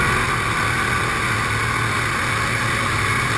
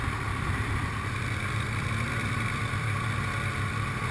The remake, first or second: second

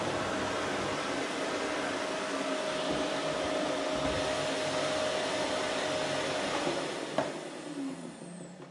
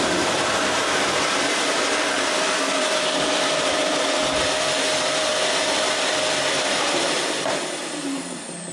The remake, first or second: second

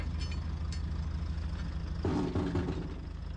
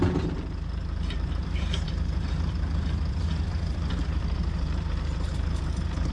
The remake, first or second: second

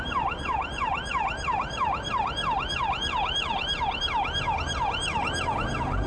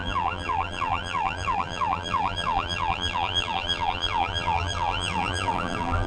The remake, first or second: second